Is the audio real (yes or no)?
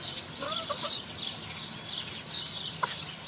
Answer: yes